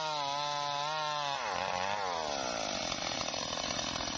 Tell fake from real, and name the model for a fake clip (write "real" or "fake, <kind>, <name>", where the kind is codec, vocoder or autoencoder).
real